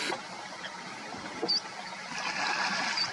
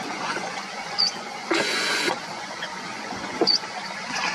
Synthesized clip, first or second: second